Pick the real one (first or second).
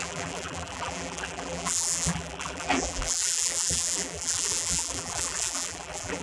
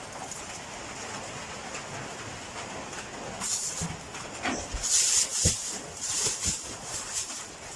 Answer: second